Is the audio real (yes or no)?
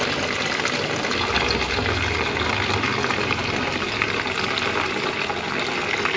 yes